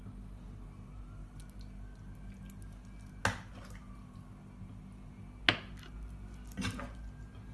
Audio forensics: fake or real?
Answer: real